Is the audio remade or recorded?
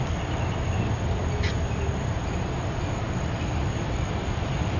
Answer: recorded